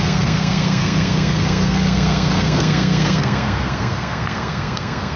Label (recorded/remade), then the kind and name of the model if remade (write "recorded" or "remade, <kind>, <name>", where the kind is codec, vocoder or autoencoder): remade, codec, SNAC